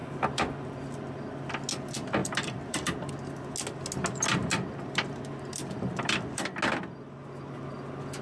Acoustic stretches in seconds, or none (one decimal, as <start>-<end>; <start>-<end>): 1.5-2.2; 3.1-4.4; 6.4-8.2